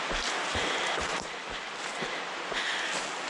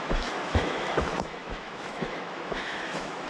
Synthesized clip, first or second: second